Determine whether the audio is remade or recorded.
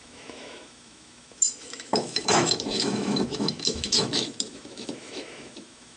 remade